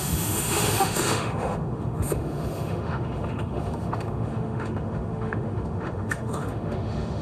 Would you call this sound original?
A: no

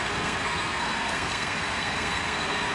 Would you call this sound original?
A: no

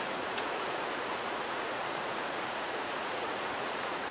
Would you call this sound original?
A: no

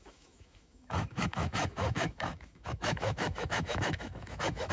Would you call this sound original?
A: no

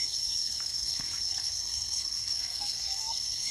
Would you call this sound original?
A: no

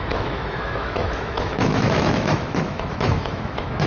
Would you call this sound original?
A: no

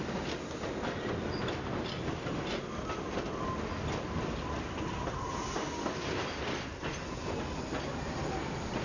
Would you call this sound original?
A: yes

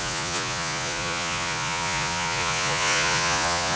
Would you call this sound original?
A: no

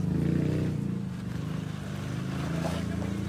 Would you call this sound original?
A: yes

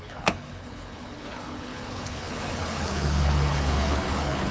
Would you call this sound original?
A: no